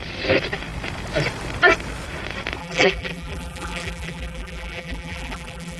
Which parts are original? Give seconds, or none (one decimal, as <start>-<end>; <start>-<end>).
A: 0.0-2.6

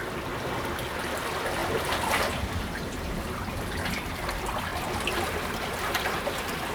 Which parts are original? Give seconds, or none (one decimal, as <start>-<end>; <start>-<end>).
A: 0.0-6.7

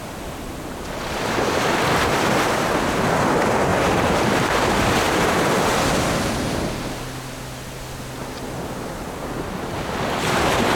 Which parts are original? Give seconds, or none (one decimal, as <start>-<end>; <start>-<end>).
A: 0.0-3.7; 4.9-10.8

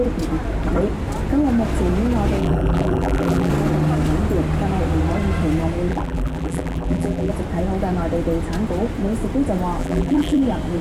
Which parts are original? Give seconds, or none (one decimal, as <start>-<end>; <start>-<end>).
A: 0.0-2.4; 3.5-5.9; 7.3-9.8; 10.4-10.8

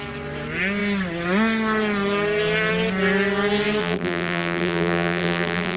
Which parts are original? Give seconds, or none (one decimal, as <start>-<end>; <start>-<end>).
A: 0.0-3.8

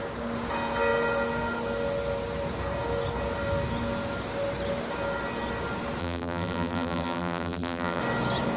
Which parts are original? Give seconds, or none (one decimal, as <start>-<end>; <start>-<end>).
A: 0.0-6.0; 8.0-8.6